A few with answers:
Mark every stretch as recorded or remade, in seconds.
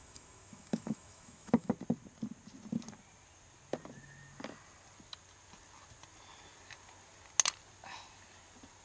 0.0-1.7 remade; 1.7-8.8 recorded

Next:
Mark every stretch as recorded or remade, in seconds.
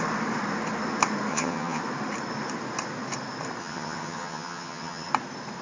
0.0-1.3 recorded; 1.3-1.8 remade; 1.8-3.6 recorded; 3.6-5.1 remade; 5.1-5.6 recorded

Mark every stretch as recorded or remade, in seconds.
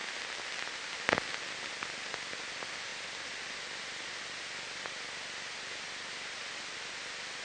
0.0-7.4 recorded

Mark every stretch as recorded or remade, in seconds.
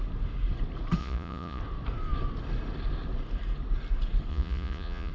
0.0-1.0 recorded; 1.0-1.6 remade; 1.6-4.3 recorded; 4.3-5.1 remade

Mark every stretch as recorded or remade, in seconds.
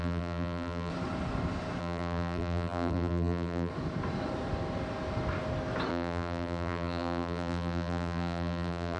0.0-0.9 remade; 0.9-1.8 recorded; 1.8-3.7 remade; 3.7-5.9 recorded; 5.9-9.0 remade